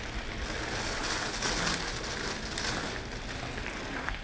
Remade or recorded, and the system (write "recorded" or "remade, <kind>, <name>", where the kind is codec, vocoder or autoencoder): recorded